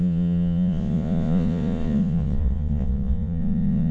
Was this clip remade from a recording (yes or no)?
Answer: yes